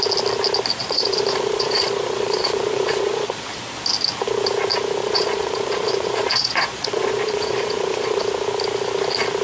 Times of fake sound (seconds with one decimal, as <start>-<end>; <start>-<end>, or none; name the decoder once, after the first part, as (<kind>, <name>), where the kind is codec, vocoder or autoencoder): 0.8-3.6 (vocoder, Vocos); 5.0-8.2